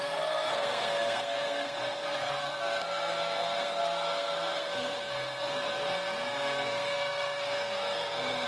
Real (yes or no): no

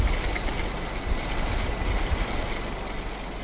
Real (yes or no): yes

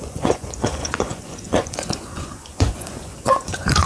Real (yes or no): no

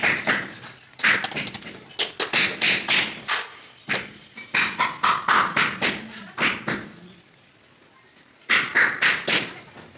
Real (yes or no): yes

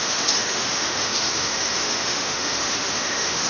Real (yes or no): no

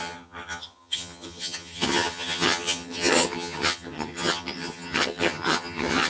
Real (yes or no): no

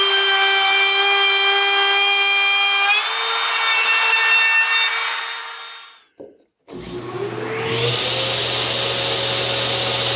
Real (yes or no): yes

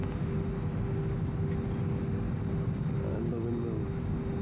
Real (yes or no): yes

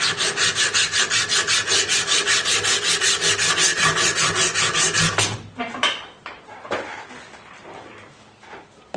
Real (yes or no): yes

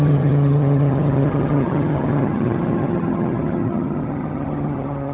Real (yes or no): no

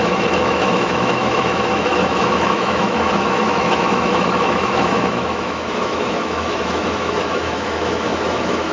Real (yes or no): no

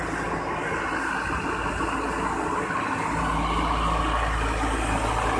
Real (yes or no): yes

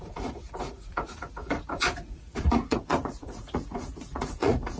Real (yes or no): no